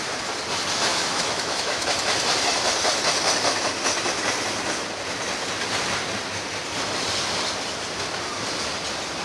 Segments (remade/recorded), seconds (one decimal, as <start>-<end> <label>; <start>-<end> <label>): 0.0-0.9 recorded; 0.9-1.9 remade; 1.9-9.2 recorded